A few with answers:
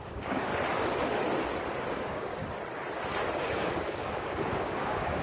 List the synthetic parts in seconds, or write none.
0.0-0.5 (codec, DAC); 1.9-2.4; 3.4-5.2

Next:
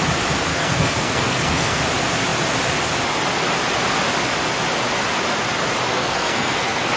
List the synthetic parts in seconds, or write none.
0.5-1.8 (codec, SNAC); 5.9-7.0

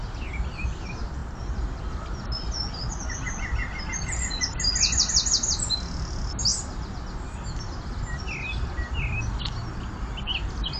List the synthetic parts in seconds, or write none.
none